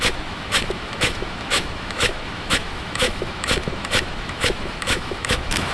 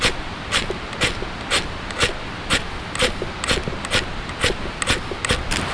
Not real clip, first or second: first